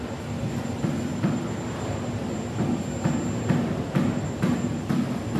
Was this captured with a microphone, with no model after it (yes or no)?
yes